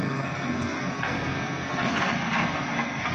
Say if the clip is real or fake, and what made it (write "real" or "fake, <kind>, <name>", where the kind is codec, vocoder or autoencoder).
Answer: fake, codec, SNAC